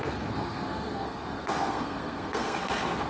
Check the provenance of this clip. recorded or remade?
remade